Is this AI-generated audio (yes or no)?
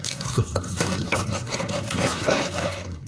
yes